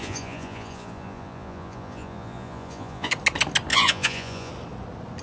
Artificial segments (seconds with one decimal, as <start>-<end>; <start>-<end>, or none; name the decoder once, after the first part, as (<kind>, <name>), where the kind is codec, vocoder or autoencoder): 0.0-3.1 (vocoder, Vocos); 3.7-4.5